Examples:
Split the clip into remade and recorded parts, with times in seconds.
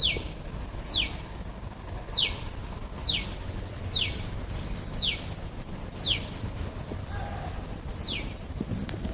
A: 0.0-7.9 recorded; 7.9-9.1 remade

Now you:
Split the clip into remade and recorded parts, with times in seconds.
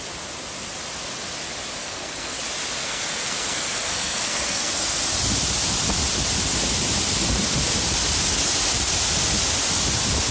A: 0.0-1.8 recorded; 1.8-2.4 remade; 2.4-2.8 recorded; 2.8-5.0 remade; 5.0-10.3 recorded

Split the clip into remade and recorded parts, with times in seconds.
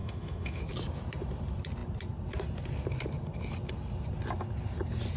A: 0.0-0.6 remade; 0.6-5.2 recorded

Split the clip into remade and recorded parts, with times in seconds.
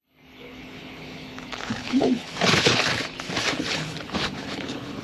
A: 0.0-2.9 remade; 2.9-3.6 recorded; 3.6-5.0 remade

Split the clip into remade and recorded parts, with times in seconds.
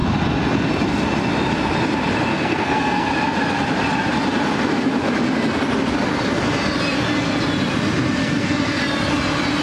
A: 0.0-2.3 recorded; 2.3-3.1 remade; 3.1-8.2 recorded; 8.2-8.8 remade; 8.8-9.6 recorded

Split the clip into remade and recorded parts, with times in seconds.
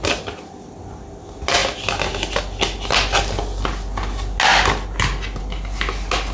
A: 0.0-6.3 recorded